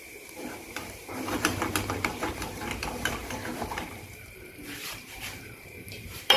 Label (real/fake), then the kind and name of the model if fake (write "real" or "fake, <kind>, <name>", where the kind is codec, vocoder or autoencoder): fake, vocoder, BigVGAN v2